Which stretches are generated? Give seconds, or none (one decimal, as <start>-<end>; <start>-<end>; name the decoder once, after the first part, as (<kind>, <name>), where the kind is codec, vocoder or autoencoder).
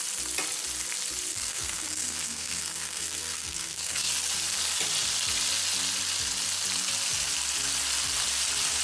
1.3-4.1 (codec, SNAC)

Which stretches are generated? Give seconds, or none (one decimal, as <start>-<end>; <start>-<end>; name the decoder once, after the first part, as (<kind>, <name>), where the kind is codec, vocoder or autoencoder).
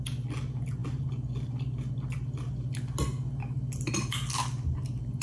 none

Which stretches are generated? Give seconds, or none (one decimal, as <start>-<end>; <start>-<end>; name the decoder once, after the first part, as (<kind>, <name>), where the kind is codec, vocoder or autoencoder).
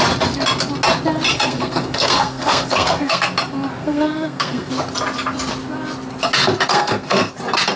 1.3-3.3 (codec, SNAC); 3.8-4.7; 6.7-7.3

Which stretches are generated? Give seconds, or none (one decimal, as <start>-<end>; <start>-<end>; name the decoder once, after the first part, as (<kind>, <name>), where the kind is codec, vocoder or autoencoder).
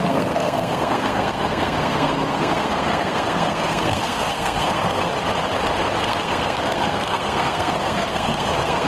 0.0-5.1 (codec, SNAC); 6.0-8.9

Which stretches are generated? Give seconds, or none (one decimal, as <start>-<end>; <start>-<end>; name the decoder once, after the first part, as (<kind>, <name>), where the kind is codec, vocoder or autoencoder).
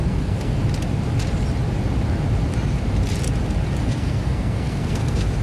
0.0-0.6 (codec, SNAC); 3.8-5.4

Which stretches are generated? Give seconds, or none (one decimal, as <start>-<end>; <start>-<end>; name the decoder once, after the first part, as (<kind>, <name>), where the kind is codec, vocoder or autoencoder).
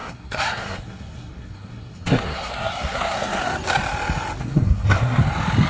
0.0-3.4 (codec, SNAC); 4.4-5.2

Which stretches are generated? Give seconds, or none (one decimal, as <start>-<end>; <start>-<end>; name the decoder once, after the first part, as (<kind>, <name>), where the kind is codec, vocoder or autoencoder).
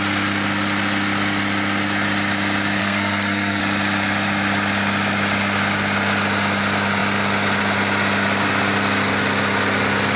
2.8-3.6 (codec, SNAC)